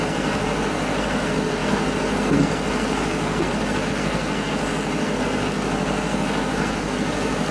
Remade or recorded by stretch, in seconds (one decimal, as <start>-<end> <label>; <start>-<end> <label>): 0.0-7.5 remade